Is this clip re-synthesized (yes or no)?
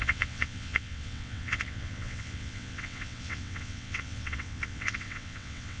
yes